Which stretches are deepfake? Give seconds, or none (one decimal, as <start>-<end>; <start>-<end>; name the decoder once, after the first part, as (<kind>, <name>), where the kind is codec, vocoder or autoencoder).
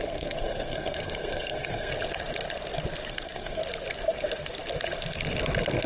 0.0-1.9 (codec, SNAC); 3.1-3.6